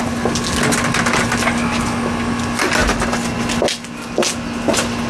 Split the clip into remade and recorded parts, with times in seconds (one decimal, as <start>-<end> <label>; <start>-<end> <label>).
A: 0.0-5.1 recorded